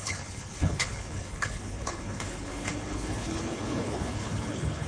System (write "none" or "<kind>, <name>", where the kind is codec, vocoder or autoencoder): codec, HILCodec